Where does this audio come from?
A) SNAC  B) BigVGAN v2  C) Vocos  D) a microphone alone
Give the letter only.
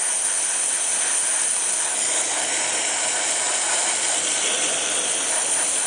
D